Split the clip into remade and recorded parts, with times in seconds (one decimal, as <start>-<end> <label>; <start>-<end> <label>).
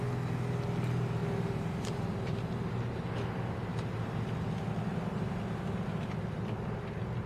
0.0-1.2 recorded; 1.2-2.5 remade; 2.5-3.7 recorded; 3.7-4.2 remade; 4.2-4.9 recorded; 4.9-5.4 remade; 5.4-7.3 recorded